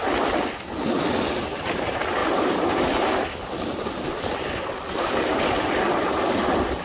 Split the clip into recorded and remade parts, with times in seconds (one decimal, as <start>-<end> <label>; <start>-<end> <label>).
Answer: 0.0-6.8 recorded